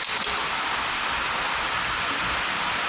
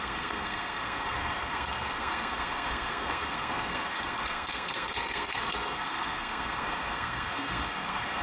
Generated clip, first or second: second